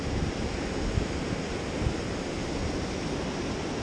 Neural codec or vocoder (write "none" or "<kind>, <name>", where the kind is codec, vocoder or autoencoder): none